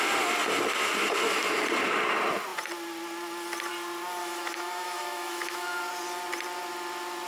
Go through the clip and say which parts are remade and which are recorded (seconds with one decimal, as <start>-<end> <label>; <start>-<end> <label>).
0.0-4.2 recorded; 4.2-5.8 remade; 5.8-7.3 recorded